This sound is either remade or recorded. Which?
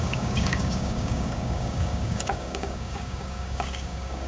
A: remade